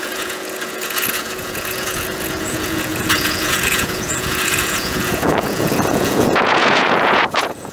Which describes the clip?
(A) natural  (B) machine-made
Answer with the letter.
B